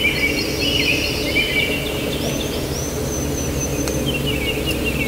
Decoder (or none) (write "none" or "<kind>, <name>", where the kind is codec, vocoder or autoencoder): none